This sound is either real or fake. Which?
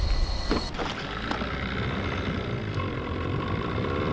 real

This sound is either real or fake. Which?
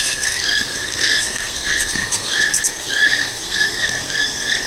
fake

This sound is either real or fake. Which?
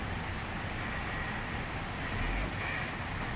real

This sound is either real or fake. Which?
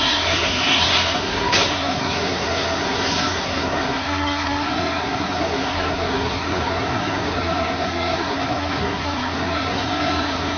fake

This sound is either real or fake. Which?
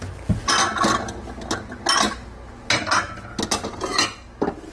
real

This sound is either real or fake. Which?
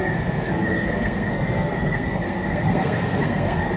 fake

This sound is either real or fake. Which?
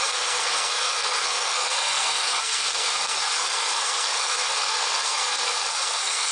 fake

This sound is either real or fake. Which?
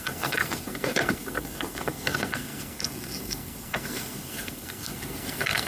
fake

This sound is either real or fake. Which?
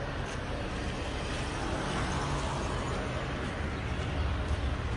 real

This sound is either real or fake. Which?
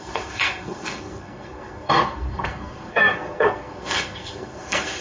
fake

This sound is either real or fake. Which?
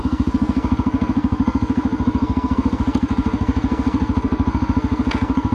fake